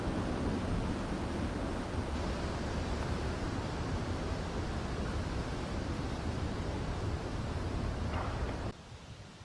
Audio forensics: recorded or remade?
remade